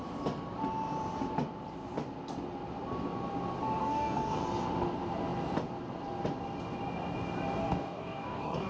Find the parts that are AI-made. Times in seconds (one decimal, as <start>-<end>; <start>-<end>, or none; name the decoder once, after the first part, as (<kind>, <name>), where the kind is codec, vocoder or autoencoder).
3.8-4.4 (codec, DAC); 7.6-8.7